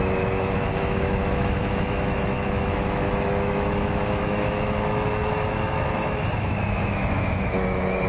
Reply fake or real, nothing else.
fake